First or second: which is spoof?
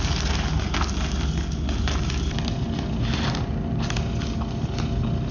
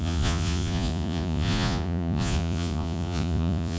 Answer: second